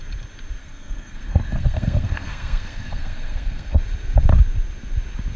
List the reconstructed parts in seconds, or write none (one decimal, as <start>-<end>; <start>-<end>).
0.6-3.8